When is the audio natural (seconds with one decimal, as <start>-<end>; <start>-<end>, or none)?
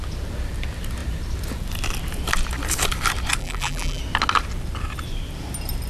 0.0-3.4; 4.0-5.9